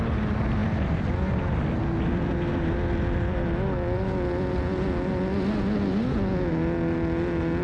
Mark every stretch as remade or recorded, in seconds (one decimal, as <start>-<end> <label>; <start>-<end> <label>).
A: 0.0-7.6 recorded